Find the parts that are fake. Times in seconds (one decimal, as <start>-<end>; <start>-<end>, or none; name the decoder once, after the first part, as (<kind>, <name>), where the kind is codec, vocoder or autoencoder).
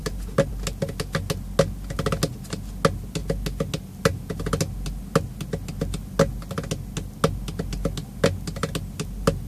0.0-0.5 (vocoder, BigVGAN v2)